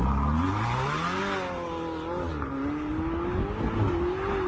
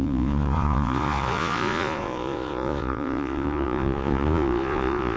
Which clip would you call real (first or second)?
first